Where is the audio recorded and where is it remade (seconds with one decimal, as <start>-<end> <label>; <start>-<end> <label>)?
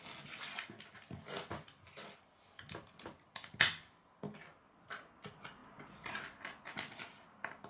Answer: 0.0-7.7 recorded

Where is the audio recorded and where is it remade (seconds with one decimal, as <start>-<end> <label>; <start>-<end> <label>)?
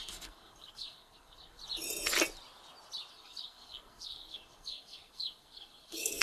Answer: 0.0-1.6 remade; 1.6-3.1 recorded; 3.1-6.2 remade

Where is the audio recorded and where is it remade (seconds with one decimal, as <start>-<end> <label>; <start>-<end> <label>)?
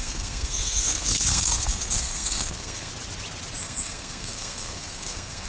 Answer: 0.0-2.9 remade; 2.9-3.6 recorded; 3.6-5.5 remade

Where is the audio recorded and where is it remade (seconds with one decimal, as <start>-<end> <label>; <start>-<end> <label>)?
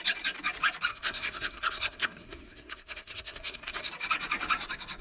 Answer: 0.0-0.9 recorded; 0.9-3.9 remade; 3.9-5.0 recorded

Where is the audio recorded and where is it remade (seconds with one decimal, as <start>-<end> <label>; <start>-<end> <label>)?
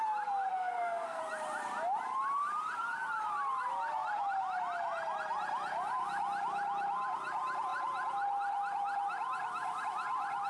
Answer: 0.0-0.5 recorded; 0.5-1.2 remade; 1.2-10.5 recorded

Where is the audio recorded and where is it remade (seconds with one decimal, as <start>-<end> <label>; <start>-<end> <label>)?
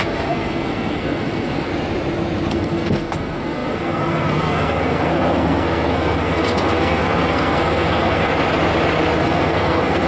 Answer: 0.0-1.7 remade; 1.7-2.5 recorded; 2.5-8.3 remade; 8.3-9.2 recorded; 9.2-10.1 remade